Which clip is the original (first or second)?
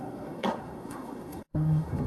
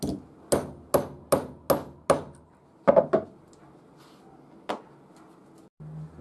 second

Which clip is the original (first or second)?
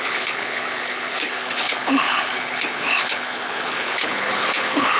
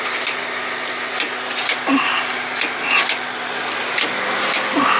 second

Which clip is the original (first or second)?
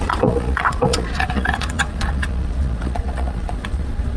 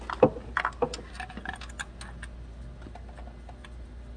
second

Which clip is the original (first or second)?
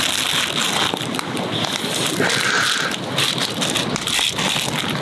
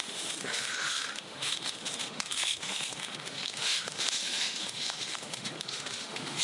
first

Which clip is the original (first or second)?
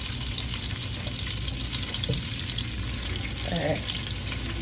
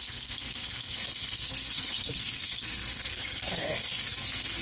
first